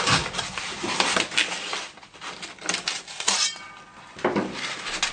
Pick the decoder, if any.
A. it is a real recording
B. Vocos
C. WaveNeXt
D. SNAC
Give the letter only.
A